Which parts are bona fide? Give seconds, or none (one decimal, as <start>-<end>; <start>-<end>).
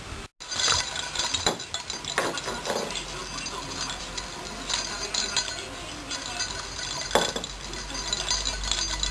0.0-9.1